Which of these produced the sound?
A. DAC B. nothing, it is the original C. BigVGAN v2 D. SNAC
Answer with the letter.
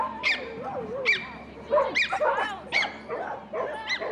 C